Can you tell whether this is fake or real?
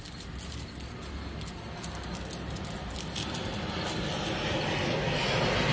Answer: real